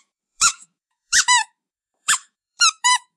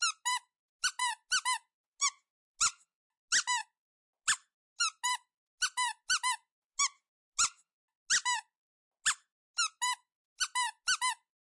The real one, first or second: second